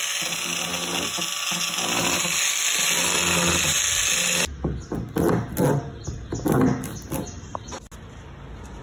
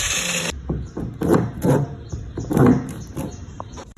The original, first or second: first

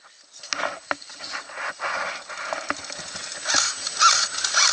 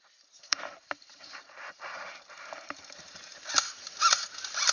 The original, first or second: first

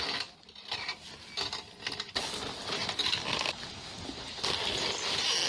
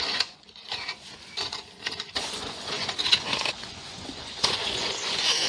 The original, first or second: first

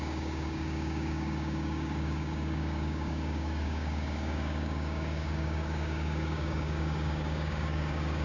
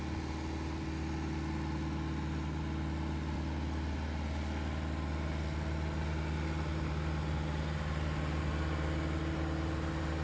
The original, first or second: second